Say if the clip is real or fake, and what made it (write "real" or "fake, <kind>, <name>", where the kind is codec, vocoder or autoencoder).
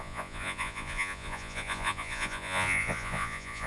fake, vocoder, Vocos